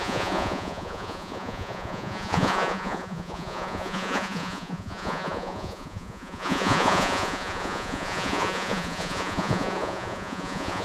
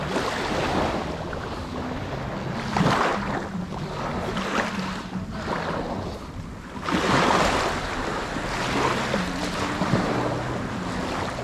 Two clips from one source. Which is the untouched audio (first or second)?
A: second